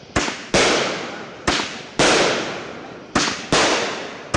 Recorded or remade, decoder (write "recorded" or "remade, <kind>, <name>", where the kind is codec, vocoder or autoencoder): recorded